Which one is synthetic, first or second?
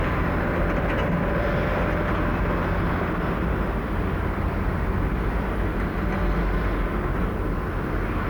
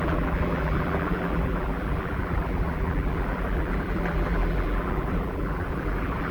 second